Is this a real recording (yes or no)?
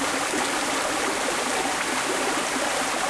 yes